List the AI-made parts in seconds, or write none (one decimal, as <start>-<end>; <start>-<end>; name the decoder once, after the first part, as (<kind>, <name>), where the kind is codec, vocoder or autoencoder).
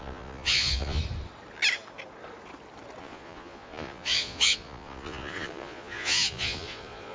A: 0.0-1.0 (vocoder, Vocos); 3.0-7.1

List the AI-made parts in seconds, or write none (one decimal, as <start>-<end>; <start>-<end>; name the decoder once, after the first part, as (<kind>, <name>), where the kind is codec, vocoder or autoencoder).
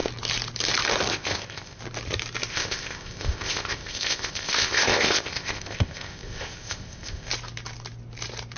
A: 1.1-1.8 (codec, ZipCodec); 2.5-7.3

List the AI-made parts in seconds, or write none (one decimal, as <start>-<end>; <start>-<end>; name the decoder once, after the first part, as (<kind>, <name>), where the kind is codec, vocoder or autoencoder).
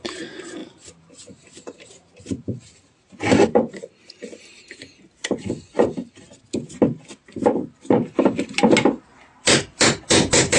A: 0.6-4.6 (vocoder, BigVGAN v2); 6.0-7.4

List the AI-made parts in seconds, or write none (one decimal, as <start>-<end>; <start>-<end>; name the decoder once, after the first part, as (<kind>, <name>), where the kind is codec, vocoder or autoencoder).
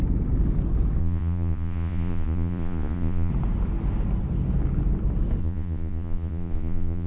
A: 1.0-3.3 (vocoder, Vocos); 5.4-7.1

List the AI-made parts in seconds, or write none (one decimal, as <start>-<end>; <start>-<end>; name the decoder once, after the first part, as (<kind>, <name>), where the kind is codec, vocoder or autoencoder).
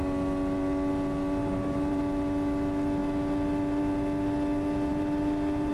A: 1.4-2.0 (vocoder, BigVGAN v2); 4.9-5.7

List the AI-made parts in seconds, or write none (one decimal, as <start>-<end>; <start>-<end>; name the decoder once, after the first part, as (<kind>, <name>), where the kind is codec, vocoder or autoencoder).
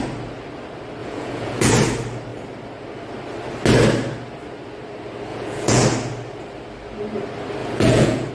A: 1.0-1.7 (vocoder, Vocos); 5.3-5.8; 7.6-8.3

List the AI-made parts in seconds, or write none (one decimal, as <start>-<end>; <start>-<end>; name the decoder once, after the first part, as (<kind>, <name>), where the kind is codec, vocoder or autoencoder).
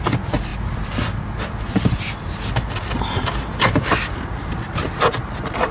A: none